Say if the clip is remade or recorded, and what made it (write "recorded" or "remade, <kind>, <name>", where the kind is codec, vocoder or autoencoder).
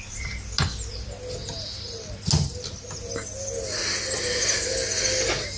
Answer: recorded